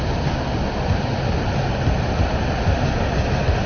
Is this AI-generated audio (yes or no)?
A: no